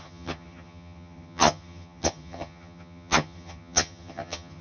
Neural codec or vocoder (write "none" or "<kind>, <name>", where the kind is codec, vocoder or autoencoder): vocoder, HiFi-GAN